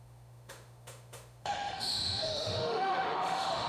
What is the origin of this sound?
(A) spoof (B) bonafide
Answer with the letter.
A